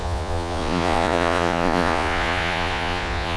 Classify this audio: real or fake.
fake